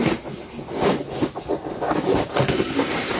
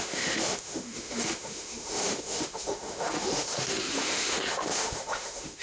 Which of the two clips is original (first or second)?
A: first